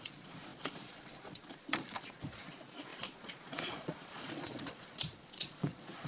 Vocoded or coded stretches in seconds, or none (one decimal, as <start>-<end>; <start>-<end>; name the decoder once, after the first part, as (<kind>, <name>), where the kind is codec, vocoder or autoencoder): 0.0-6.1 (vocoder, Vocos)